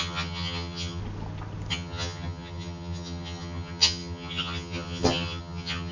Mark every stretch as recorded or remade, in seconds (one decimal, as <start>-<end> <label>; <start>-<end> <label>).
0.0-1.0 remade; 1.0-1.7 recorded; 1.7-5.9 remade